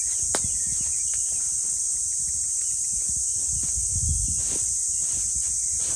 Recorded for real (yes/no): yes